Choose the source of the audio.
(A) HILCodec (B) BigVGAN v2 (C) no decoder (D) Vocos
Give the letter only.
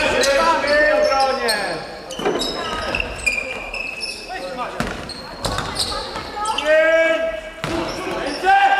C